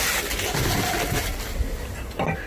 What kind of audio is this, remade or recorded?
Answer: recorded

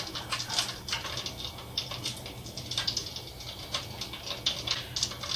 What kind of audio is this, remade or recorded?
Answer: recorded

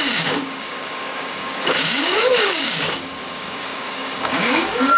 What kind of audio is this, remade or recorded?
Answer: remade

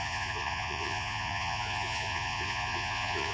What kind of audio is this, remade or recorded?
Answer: remade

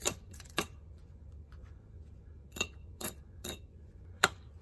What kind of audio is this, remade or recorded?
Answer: remade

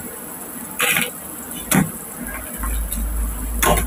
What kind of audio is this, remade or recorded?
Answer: recorded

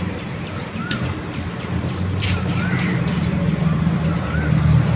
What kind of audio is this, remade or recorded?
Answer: remade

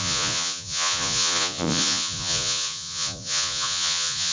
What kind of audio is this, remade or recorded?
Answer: remade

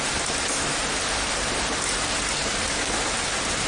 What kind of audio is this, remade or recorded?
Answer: recorded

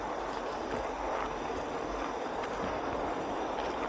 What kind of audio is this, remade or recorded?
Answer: recorded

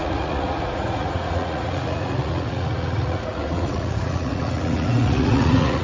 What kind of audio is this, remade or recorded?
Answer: remade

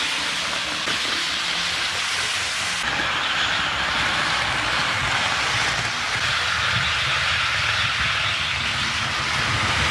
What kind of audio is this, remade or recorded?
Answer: recorded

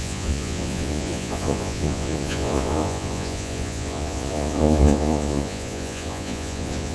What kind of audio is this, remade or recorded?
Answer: remade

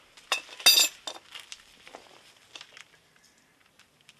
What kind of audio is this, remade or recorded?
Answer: recorded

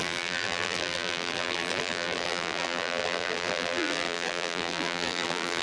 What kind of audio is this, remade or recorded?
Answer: remade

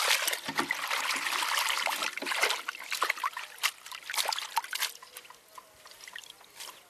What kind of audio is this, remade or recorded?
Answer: recorded